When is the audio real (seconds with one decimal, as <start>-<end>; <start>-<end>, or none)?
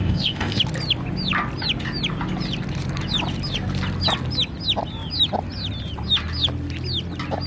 0.6-7.5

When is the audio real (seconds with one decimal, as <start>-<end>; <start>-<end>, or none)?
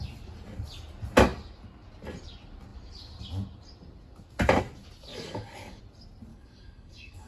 0.0-5.1; 5.8-6.3